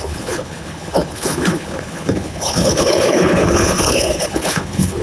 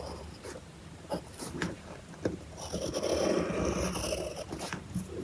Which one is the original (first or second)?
second